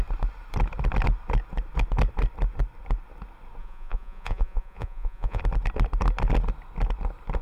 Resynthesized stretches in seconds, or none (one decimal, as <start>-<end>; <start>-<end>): 3.6-5.4